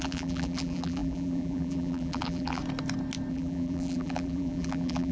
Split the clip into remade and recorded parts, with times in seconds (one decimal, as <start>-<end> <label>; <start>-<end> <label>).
0.0-2.6 remade; 2.6-3.3 recorded; 3.3-5.1 remade